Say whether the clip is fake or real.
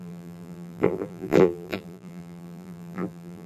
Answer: fake